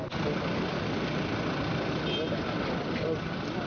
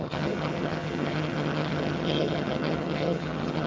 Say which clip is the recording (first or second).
first